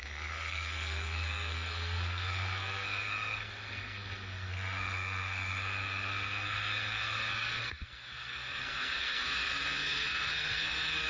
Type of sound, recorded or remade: remade